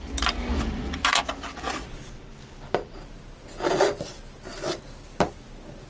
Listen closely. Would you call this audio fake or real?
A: real